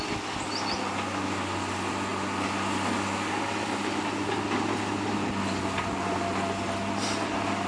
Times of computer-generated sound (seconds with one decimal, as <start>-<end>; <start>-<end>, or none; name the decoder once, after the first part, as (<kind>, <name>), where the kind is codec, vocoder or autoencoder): none